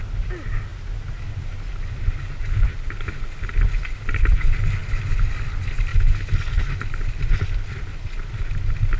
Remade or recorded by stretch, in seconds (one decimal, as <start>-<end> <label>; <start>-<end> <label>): 0.0-9.0 recorded